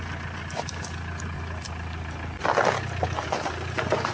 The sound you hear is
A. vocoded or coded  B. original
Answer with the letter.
B